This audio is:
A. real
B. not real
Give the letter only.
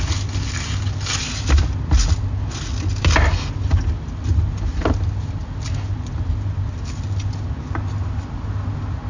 A